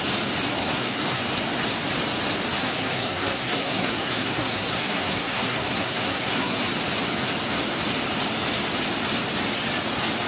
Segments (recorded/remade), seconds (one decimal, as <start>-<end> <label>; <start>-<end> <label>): 0.0-0.6 recorded; 0.6-1.2 remade; 1.2-2.6 recorded; 2.6-6.6 remade; 6.6-10.3 recorded